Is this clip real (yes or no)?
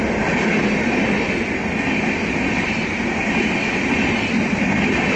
yes